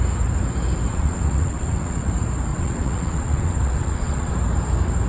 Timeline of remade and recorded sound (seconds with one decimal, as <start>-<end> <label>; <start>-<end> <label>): 0.0-0.9 recorded; 0.9-2.1 remade; 2.1-2.5 recorded; 2.5-4.3 remade; 4.3-5.1 recorded